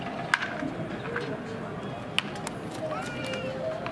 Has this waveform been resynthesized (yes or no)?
no